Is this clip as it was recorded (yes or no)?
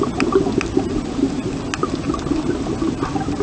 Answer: yes